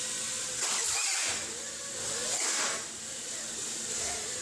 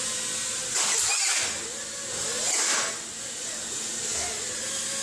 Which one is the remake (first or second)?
first